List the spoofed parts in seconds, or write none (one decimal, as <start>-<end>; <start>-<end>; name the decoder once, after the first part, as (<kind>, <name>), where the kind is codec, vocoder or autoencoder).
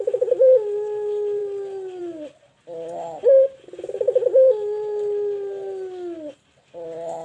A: none